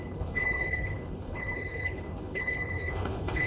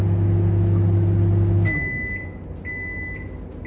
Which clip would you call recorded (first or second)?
second